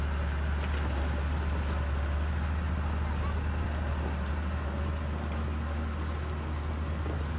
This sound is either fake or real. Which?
real